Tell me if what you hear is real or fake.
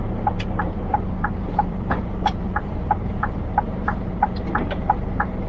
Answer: fake